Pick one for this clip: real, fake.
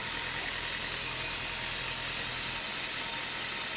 real